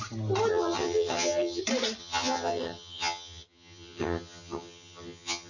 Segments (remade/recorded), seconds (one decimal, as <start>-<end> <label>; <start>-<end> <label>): 0.0-0.5 recorded; 0.5-1.6 remade; 1.6-2.0 recorded; 2.0-5.5 remade